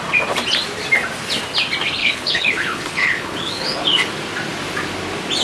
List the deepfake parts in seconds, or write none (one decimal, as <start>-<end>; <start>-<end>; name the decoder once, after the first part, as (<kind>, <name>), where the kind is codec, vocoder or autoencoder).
2.0-4.1 (codec, HILCodec)

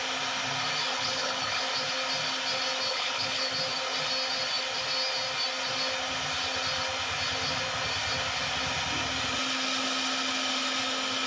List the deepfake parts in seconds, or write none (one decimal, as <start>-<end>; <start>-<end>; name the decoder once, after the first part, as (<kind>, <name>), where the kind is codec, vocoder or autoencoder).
0.9-1.6 (codec, HILCodec); 2.9-3.5

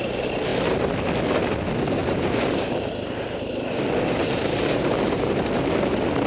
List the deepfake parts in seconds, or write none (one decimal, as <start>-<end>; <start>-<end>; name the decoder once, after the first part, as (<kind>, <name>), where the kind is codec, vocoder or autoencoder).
2.0-5.6 (vocoder, BigVGAN v2)

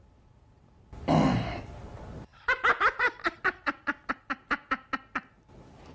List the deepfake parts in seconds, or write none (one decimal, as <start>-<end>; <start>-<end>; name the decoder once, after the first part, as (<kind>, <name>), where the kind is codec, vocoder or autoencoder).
none

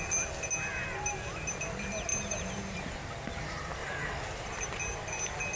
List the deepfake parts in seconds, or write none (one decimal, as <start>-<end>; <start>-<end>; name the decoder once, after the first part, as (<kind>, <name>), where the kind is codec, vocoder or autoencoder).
2.1-2.6 (vocoder, BigVGAN v2); 3.8-4.6